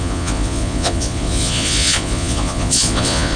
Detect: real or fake fake